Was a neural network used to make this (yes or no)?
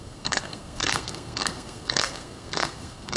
yes